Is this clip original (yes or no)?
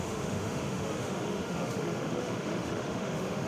no